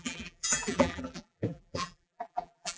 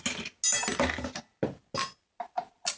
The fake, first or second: first